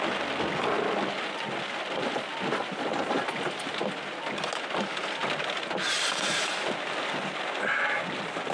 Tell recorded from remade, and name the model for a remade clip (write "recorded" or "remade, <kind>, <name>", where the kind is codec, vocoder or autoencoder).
recorded